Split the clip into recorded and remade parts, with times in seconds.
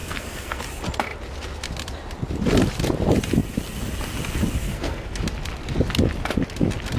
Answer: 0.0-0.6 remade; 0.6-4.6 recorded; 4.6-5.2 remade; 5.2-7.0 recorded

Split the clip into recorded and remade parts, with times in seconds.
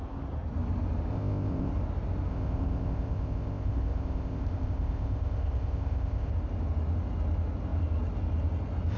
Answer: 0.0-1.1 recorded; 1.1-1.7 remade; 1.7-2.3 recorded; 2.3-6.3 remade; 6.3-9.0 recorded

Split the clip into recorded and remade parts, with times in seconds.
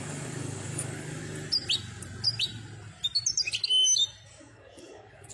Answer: 0.0-1.2 remade; 1.2-4.4 recorded; 4.4-5.3 remade